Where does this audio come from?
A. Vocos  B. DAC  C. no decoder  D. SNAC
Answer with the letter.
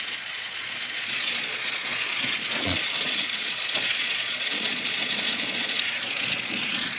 A